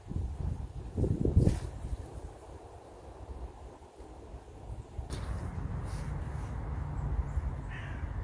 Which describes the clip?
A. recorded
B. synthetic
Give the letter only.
A